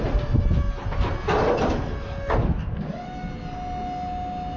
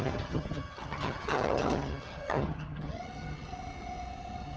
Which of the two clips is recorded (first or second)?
first